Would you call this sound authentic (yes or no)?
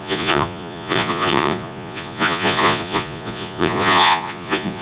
no